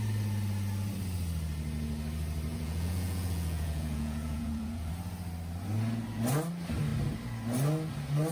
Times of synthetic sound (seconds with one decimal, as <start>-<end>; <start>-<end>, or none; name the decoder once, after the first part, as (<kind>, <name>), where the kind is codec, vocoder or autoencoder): 2.5-4.9 (vocoder, Vocos)